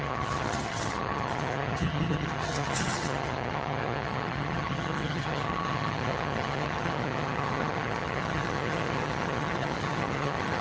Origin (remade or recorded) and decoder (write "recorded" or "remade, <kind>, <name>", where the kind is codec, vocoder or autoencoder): remade, vocoder, HiFi-GAN